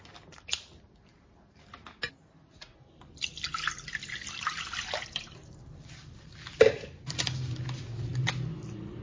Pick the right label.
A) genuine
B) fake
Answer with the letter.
A